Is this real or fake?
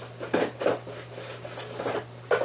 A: real